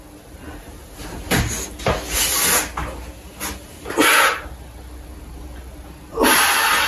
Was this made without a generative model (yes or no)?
yes